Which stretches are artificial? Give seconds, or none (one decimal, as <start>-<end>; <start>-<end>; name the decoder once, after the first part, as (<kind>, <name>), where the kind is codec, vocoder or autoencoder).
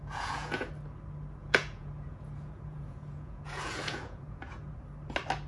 0.0-0.7 (vocoder, Vocos); 1.4-4.7